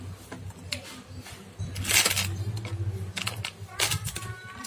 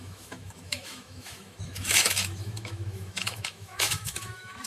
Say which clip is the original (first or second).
first